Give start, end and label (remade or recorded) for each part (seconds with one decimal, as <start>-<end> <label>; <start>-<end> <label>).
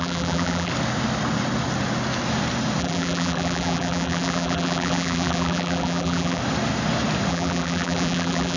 0.0-0.7 remade; 0.7-2.8 recorded; 2.8-6.4 remade; 6.4-7.3 recorded; 7.3-8.6 remade